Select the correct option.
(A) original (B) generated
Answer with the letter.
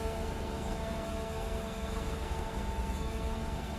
B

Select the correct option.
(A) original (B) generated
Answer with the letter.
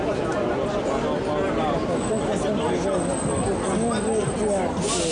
A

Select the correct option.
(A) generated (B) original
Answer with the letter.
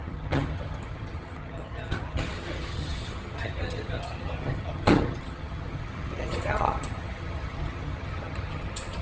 A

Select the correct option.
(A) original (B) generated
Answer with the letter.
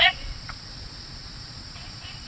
B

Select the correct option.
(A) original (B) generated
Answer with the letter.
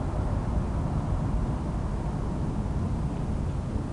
A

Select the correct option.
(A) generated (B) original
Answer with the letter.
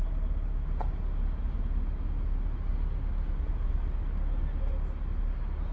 B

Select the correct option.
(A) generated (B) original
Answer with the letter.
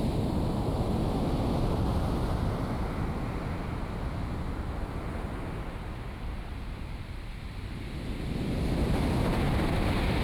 B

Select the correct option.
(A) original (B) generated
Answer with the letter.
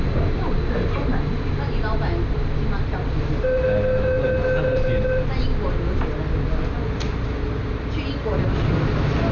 A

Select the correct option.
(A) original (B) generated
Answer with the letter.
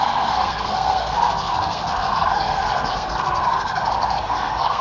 B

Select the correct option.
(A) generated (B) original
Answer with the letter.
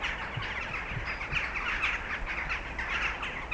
B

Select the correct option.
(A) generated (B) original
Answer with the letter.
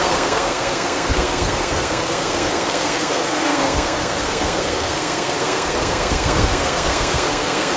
A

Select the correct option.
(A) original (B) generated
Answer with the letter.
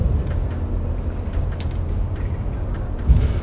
A